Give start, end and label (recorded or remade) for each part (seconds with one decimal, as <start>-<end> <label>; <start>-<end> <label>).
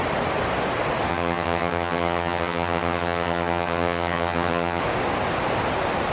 0.0-1.1 recorded; 1.1-4.8 remade; 4.8-6.1 recorded